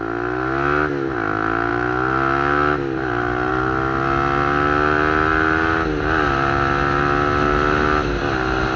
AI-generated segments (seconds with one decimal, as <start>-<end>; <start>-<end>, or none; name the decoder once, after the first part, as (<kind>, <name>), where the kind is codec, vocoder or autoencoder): none